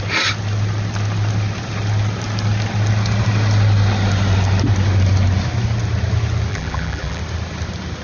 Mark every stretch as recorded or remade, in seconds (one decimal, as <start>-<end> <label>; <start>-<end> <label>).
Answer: 0.0-6.5 recorded; 6.5-7.2 remade; 7.2-8.0 recorded